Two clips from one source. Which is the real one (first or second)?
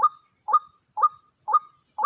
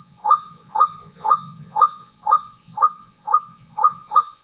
first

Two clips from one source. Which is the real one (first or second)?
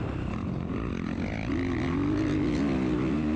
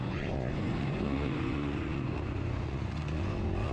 first